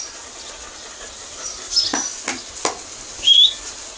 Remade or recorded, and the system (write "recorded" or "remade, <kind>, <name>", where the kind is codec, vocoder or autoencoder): recorded